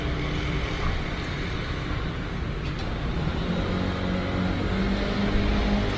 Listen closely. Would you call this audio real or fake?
real